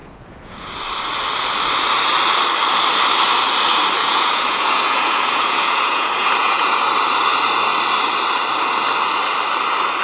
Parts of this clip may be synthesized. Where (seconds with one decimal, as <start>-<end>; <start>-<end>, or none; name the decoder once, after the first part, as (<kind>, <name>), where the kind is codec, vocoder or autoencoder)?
0.0-0.7 (vocoder, Vocos); 4.0-6.8